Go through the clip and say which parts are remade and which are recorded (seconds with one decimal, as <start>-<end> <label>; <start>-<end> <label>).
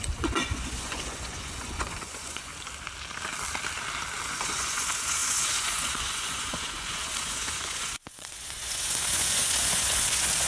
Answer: 0.0-2.5 remade; 2.5-4.3 recorded; 4.3-10.5 remade